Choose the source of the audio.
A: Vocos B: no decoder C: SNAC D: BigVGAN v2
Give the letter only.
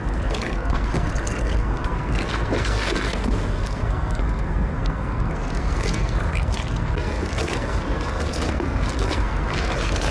C